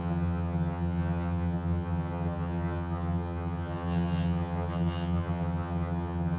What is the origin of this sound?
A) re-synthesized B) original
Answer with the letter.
A